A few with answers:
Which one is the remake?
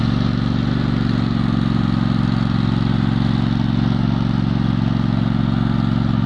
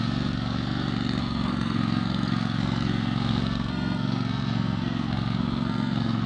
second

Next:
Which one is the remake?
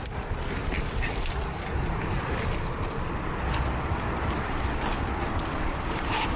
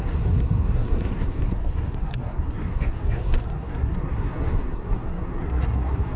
second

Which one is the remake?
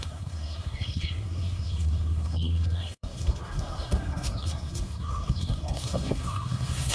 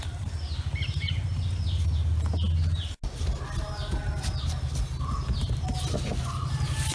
first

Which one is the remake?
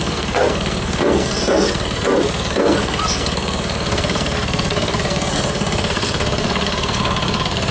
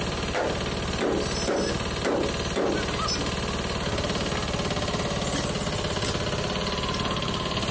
first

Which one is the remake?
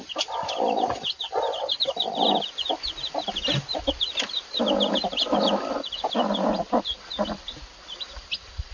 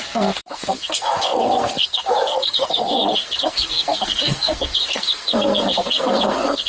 second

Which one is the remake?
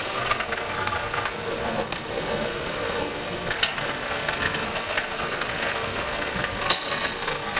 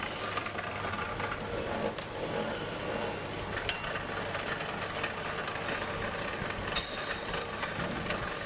first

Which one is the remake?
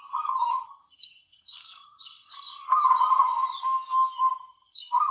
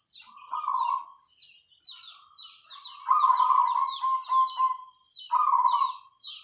first